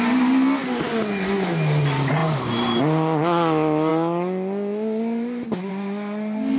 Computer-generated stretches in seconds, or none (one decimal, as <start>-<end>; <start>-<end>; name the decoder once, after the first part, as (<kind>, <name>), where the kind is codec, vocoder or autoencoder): none